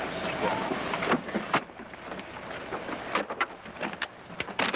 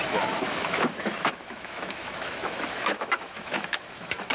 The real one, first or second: first